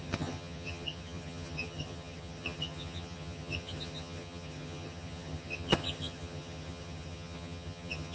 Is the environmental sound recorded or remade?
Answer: remade